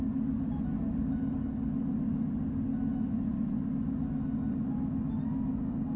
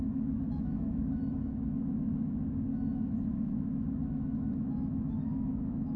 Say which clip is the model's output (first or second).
second